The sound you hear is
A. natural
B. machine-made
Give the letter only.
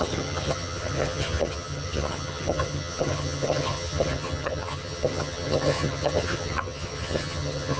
B